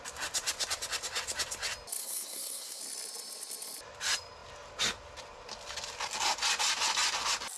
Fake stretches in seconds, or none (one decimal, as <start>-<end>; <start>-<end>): 2.0-2.8